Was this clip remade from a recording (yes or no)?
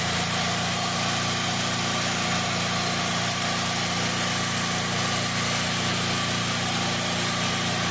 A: no